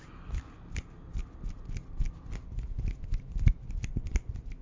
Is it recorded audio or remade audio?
recorded